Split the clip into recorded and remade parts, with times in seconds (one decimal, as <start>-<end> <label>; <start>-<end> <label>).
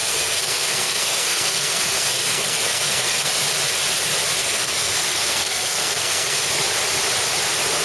0.0-3.3 remade; 3.3-4.4 recorded; 4.4-6.5 remade; 6.5-7.8 recorded